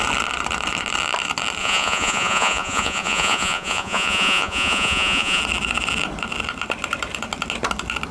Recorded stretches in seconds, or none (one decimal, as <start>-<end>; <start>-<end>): 0.0-1.6; 5.4-8.1